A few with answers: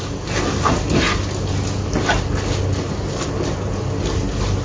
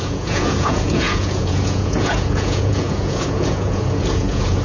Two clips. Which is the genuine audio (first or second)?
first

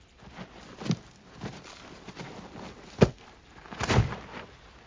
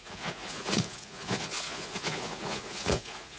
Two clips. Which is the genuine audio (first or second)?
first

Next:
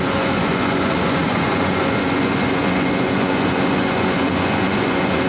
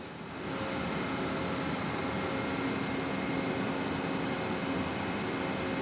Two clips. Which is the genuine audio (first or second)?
second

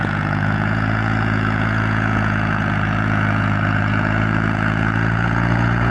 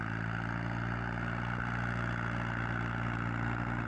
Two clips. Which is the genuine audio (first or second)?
second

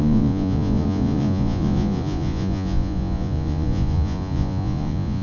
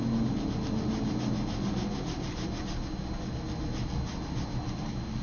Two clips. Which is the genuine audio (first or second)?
second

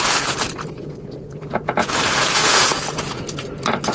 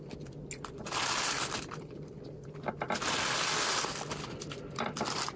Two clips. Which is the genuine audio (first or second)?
second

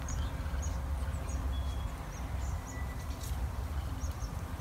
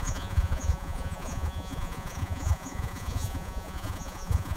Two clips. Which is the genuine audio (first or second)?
first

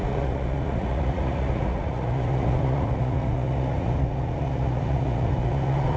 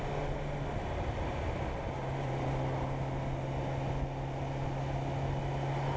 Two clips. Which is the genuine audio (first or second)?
second